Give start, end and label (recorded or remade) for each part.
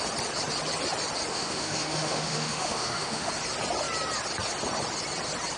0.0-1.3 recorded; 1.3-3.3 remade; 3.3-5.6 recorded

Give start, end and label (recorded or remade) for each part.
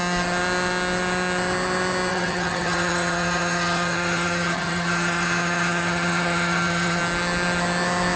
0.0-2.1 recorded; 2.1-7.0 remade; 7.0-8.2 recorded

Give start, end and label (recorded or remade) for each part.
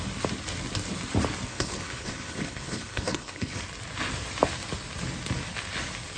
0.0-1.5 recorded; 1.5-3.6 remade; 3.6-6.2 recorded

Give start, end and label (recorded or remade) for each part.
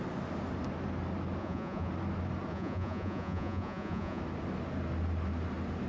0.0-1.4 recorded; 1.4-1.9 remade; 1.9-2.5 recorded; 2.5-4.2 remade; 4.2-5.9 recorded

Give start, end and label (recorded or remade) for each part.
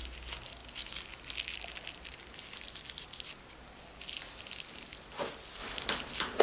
0.0-6.4 recorded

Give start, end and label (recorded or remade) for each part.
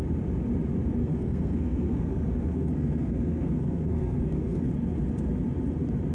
0.0-1.0 recorded; 1.0-4.7 remade; 4.7-6.1 recorded